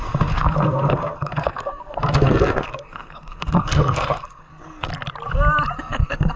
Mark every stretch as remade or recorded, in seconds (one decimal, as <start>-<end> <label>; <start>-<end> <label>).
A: 0.0-4.9 remade; 4.9-5.8 recorded; 5.8-6.4 remade